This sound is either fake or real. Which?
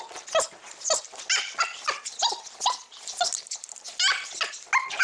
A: real